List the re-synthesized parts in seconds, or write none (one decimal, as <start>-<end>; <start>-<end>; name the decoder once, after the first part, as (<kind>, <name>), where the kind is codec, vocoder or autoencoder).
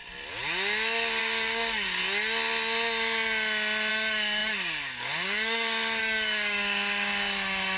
1.2-2.0 (codec, DAC); 3.9-7.8